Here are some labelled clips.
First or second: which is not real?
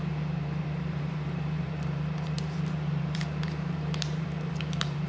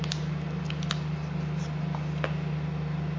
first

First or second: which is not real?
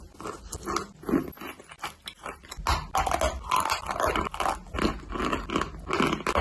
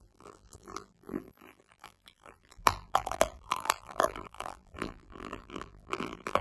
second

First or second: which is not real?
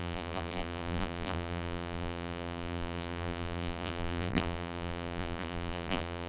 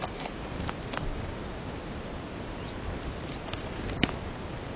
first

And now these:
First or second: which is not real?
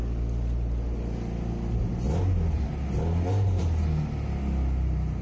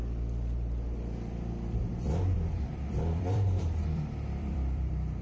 second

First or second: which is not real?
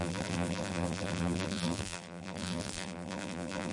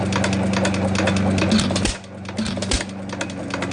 first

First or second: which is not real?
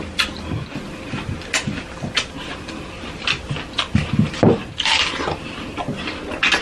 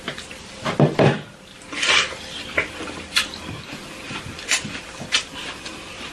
second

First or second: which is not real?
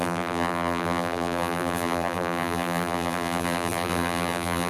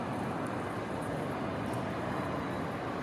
first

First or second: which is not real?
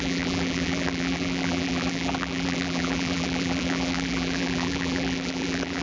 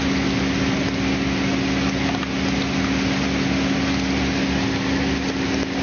first